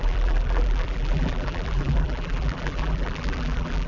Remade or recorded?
remade